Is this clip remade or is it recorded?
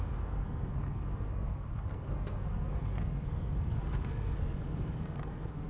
remade